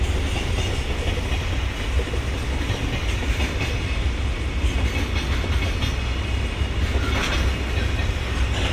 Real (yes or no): yes